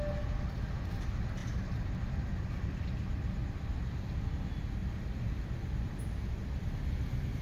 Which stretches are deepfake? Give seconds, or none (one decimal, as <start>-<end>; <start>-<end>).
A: none